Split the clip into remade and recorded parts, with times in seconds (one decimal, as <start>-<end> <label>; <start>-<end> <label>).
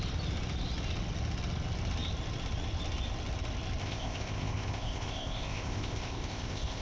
0.0-3.8 recorded; 3.8-6.8 remade